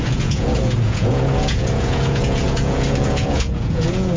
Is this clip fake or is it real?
fake